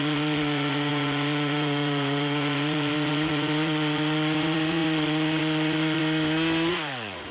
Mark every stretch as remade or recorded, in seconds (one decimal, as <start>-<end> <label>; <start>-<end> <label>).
0.0-6.0 remade; 6.0-6.7 recorded; 6.7-7.3 remade